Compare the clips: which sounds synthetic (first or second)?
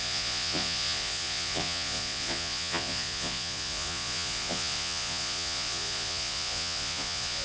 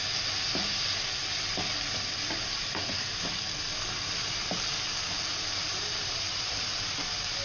first